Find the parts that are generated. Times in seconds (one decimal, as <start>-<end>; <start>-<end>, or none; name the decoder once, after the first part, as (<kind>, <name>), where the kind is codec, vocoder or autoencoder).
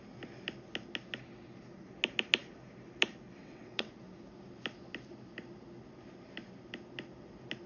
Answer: 3.4-3.9 (vocoder, WaveNeXt)